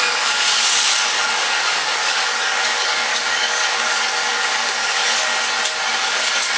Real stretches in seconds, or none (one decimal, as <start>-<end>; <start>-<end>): 5.3-5.9